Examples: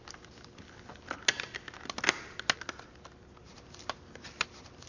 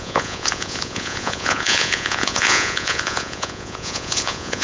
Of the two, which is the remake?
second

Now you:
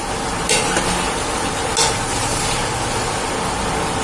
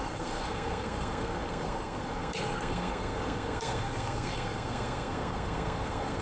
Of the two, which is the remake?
second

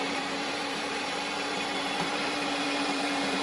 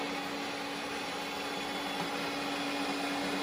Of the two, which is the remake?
first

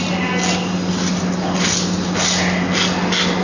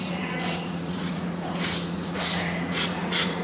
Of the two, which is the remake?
second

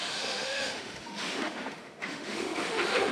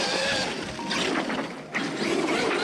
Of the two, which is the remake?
first